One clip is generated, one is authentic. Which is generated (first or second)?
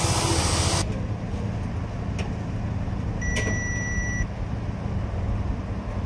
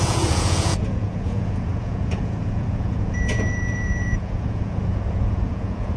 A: second